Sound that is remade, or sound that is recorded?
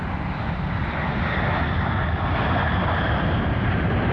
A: recorded